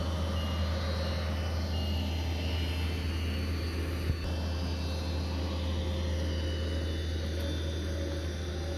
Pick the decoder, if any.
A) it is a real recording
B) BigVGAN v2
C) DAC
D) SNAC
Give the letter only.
A